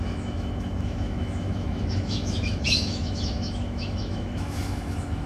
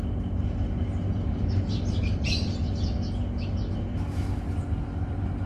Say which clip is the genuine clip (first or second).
second